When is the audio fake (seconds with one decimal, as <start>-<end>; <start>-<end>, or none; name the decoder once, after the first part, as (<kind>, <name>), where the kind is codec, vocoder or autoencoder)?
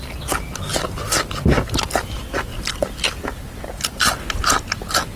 0.7-2.1 (vocoder, BigVGAN v2); 2.5-3.2